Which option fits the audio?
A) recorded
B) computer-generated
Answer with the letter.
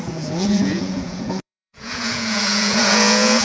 B